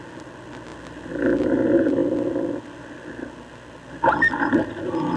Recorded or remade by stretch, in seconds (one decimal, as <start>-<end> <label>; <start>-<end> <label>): 0.0-5.2 recorded